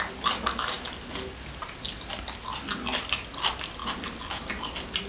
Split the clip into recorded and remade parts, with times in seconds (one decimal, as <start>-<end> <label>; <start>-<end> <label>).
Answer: 0.0-5.1 recorded